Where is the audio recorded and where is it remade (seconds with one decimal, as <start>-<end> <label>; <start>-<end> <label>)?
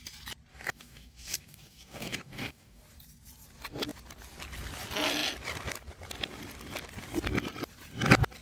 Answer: 0.0-0.5 recorded; 0.5-2.8 remade; 2.8-8.4 recorded